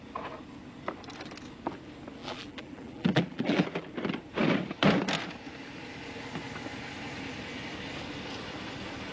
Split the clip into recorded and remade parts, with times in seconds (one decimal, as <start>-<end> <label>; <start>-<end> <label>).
0.0-2.2 recorded; 2.2-3.9 remade; 3.9-9.1 recorded